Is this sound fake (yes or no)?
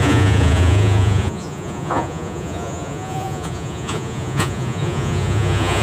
yes